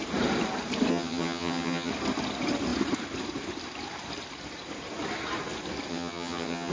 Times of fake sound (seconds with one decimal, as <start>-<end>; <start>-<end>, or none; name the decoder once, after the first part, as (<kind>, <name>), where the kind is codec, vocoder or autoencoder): 0.9-1.9 (vocoder, HiFi-GAN); 5.9-6.7

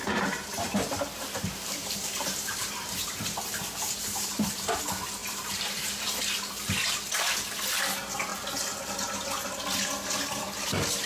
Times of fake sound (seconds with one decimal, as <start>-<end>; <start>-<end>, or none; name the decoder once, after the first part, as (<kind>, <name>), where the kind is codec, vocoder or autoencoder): 0.0-4.8 (vocoder, BigVGAN v2); 5.2-6.2

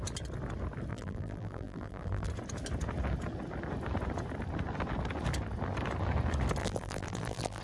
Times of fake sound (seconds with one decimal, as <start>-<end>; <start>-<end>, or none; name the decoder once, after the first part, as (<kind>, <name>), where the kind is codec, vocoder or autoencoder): 0.9-2.3 (vocoder, BigVGAN v2); 6.6-7.6

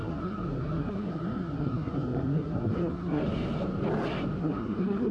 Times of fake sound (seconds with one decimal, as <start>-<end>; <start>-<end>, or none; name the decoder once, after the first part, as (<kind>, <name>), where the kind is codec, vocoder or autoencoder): 0.0-3.2 (codec, SNAC); 4.4-5.1

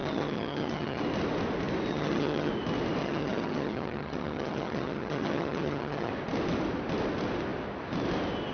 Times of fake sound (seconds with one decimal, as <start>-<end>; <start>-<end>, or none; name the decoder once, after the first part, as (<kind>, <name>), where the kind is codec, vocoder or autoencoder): 0.0-1.0 (vocoder, HiFi-GAN); 1.9-2.5; 3.0-6.1

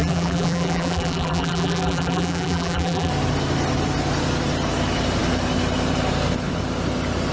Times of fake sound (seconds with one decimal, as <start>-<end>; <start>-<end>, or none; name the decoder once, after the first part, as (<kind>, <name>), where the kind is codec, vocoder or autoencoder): 0.0-3.1 (vocoder, BigVGAN v2)

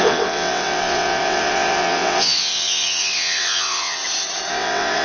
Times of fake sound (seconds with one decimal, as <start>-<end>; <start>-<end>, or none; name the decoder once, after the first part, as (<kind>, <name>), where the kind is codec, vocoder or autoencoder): 0.0-4.0 (vocoder, WaveNeXt); 4.5-5.0